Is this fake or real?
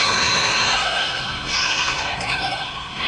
fake